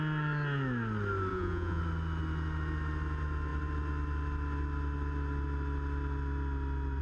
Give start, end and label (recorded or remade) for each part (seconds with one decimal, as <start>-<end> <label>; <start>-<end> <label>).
0.0-1.3 recorded; 1.3-1.8 remade; 1.8-7.0 recorded